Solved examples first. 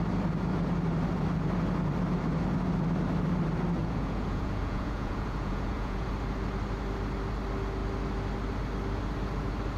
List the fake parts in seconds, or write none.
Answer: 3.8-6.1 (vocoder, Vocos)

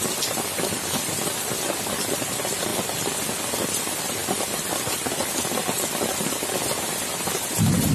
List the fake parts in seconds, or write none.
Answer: none

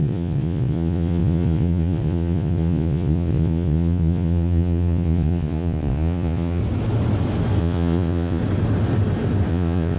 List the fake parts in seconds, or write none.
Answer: 0.0-6.6 (vocoder, Vocos); 7.6-8.4; 9.5-10.0

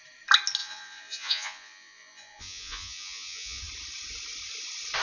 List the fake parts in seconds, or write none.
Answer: 0.6-3.6 (vocoder, Vocos)

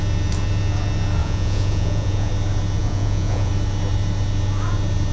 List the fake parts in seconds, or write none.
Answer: 1.2-2.3 (vocoder, Vocos); 2.8-3.5

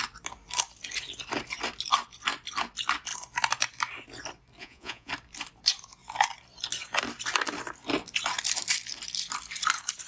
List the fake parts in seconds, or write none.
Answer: 4.6-5.1 (vocoder, Vocos)

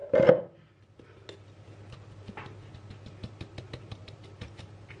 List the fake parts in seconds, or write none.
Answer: none